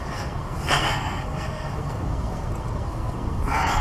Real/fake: fake